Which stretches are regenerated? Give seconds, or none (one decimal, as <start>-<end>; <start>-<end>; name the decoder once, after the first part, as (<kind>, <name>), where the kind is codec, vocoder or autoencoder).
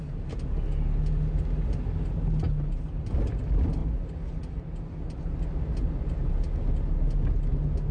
none